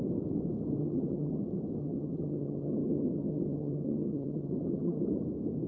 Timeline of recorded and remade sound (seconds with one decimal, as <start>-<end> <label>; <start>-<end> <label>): 0.0-0.8 recorded; 0.8-1.4 remade; 1.4-1.8 recorded; 1.8-5.0 remade; 5.0-5.7 recorded